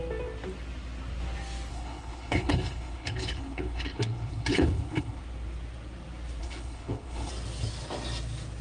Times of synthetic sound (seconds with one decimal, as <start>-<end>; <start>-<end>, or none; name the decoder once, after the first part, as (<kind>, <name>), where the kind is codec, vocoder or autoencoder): 1.7-5.2 (codec, HILCodec); 6.4-7.3